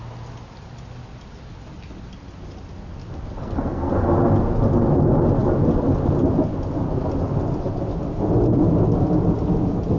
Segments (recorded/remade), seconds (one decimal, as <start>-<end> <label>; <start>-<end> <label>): 0.0-3.4 recorded; 3.4-3.9 remade; 3.9-10.0 recorded